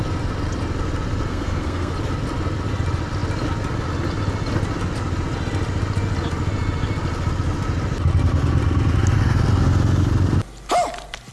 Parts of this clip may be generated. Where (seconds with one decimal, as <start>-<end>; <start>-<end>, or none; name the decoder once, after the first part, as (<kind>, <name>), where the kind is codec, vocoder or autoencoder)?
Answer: 1.3-1.9 (codec, SNAC)